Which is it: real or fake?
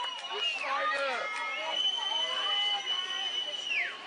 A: real